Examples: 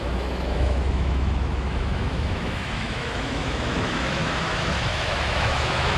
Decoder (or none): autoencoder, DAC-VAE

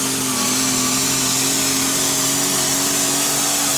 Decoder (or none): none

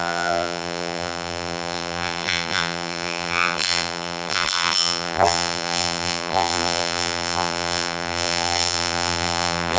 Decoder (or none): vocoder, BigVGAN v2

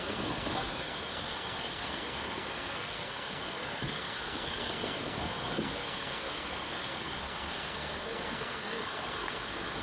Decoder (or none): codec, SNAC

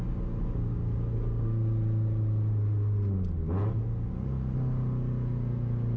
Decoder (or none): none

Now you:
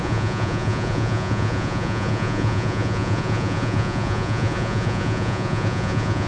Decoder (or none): vocoder, Vocos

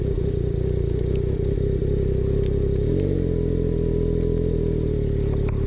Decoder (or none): none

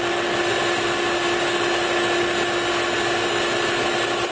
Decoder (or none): none